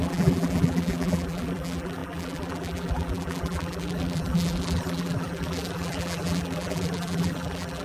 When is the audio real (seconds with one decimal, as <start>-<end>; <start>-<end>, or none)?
none

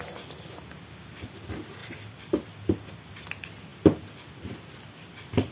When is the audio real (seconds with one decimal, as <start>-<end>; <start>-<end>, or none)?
0.0-5.5